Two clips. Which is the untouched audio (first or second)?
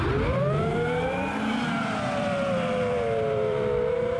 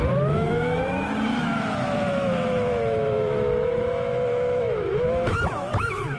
first